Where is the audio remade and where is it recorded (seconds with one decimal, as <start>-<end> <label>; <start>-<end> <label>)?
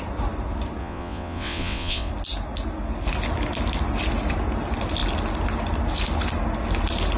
0.0-0.8 recorded; 0.8-2.1 remade; 2.1-7.2 recorded